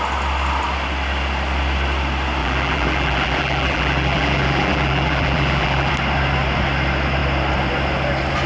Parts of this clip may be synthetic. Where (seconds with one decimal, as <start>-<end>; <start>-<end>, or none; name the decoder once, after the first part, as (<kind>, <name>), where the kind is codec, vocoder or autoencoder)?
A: 2.4-5.9 (vocoder, BigVGAN v2)

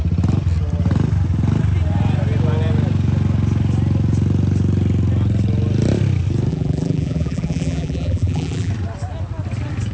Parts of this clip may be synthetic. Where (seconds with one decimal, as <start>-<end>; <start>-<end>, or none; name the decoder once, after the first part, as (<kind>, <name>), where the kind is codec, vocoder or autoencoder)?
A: 6.5-8.7 (vocoder, BigVGAN v2)

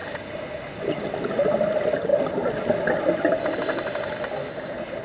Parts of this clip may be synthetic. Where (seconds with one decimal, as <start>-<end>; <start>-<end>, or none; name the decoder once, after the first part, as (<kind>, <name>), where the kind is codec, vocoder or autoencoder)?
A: none